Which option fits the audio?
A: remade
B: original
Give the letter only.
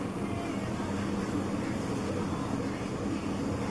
B